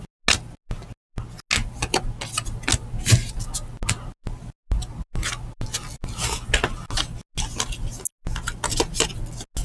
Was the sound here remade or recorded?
recorded